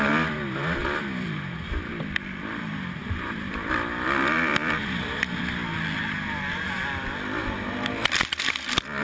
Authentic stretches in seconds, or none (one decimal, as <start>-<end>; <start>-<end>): 0.0-0.8; 1.9-3.0; 5.4-9.0